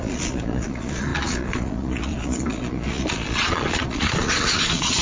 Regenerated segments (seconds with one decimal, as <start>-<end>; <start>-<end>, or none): 0.0-5.0

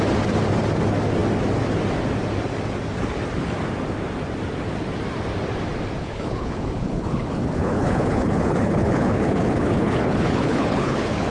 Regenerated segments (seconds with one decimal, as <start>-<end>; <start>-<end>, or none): 6.0-11.3

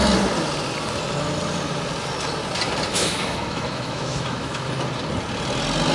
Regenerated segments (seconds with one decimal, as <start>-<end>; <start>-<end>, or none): 2.9-4.6

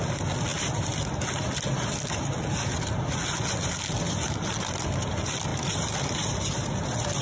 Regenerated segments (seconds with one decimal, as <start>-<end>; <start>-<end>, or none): none

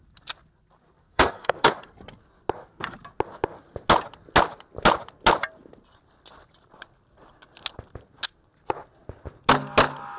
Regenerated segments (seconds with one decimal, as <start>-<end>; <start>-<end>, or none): 1.0-1.7

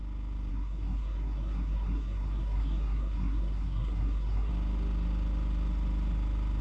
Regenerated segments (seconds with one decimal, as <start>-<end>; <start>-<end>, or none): 0.5-4.5

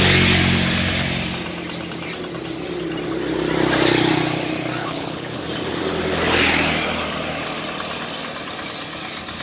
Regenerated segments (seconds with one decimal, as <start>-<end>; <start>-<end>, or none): 4.8-5.4